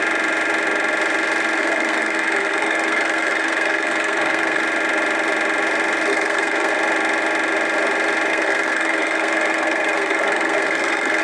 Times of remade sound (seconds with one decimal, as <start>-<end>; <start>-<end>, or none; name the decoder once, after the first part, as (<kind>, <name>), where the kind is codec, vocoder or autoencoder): 1.6-4.6 (codec, SNAC); 6.1-6.7; 8.3-11.2